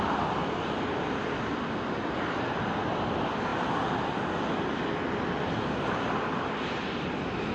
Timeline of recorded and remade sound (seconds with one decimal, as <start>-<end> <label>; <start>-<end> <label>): 0.0-7.5 recorded